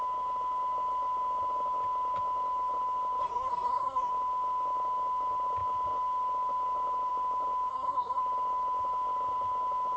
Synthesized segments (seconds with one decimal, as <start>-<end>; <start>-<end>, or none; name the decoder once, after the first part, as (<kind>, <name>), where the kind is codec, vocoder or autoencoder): 3.2-4.1 (codec, SNAC); 7.7-8.2

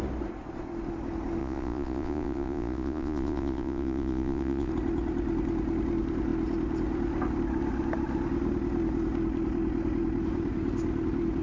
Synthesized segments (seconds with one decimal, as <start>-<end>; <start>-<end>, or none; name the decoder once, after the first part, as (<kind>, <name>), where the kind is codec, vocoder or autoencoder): 1.4-4.7 (vocoder, Vocos)

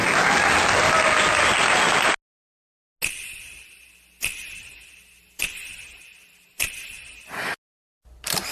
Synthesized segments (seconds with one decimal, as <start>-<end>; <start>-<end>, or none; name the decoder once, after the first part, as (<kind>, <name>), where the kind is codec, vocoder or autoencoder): none

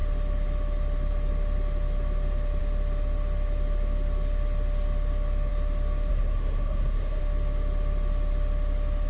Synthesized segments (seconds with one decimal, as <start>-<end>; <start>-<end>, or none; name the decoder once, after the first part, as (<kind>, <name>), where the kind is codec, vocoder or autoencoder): 6.1-7.2 (codec, SNAC)